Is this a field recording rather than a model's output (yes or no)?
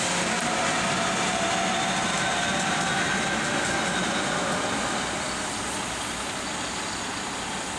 yes